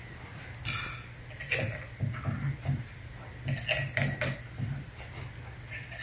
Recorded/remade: recorded